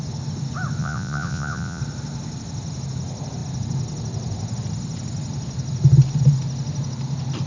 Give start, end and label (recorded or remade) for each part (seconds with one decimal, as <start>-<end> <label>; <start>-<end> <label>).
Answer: 0.0-0.8 recorded; 0.8-1.8 remade; 1.8-7.5 recorded